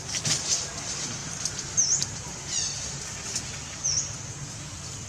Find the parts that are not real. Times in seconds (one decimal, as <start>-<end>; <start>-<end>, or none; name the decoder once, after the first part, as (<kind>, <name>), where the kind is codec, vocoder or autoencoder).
1.2-4.3 (vocoder, BigVGAN v2)